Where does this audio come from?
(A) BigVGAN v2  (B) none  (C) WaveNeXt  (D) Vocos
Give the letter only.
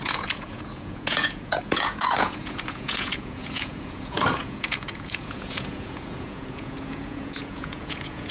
D